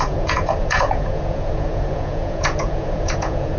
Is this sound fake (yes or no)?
yes